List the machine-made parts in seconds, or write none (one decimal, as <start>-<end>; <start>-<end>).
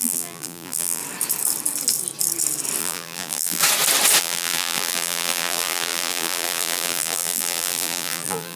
0.0-1.0; 2.8-3.6; 4.2-8.6